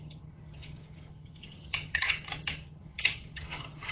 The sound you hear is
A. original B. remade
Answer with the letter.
B